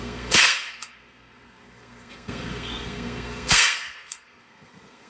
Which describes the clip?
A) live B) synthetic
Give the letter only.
B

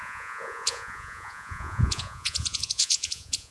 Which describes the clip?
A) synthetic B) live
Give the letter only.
A